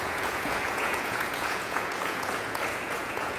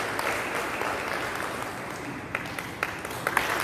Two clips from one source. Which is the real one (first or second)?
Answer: second